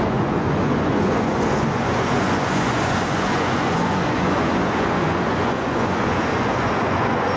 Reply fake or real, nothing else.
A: fake